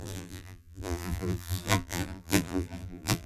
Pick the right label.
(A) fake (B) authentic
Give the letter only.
A